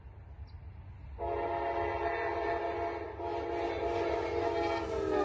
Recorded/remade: recorded